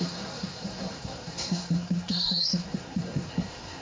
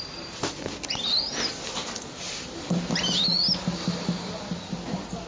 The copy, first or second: first